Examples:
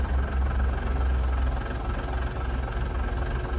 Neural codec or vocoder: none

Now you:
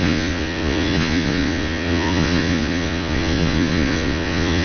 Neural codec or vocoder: vocoder, Vocos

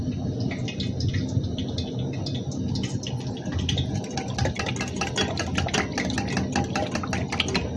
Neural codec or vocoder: none